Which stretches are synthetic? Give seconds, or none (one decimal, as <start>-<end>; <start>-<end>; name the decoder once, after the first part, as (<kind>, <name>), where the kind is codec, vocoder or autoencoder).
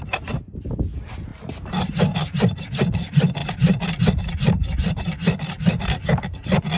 none